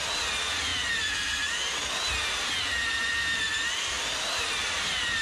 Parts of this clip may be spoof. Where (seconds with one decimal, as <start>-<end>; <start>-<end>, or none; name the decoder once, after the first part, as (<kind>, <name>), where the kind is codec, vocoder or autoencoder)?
0.0-0.7 (vocoder, BigVGAN v2); 3.8-5.2

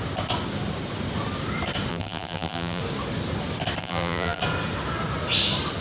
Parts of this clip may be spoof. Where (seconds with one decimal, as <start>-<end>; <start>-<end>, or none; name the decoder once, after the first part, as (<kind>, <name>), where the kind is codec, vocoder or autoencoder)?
1.9-2.8 (vocoder, BigVGAN v2); 3.8-4.4

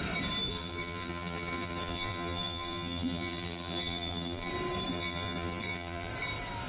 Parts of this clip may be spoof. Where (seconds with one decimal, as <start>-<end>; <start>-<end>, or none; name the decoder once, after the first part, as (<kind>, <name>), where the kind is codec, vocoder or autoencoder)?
0.5-4.5 (vocoder, BigVGAN v2); 4.9-6.1

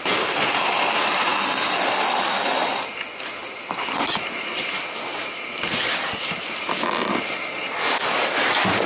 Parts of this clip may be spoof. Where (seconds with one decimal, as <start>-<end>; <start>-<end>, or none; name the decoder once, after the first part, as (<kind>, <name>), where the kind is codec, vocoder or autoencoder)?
3.4-7.8 (vocoder, BigVGAN v2)

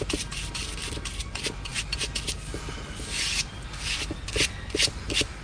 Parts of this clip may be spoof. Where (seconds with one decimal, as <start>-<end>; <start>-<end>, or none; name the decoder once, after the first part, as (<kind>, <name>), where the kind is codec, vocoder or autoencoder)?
none

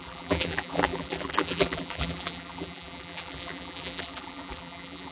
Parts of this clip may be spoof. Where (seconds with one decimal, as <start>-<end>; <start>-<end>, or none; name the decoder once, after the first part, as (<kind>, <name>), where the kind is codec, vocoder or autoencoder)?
0.0-5.1 (vocoder, BigVGAN v2)